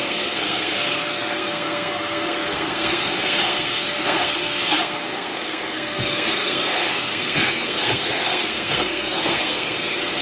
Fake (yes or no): yes